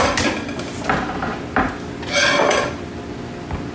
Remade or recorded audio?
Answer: recorded